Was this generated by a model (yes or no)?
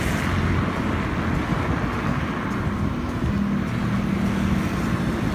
no